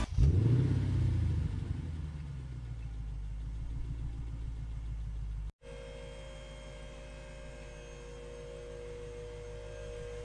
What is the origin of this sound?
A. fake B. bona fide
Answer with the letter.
B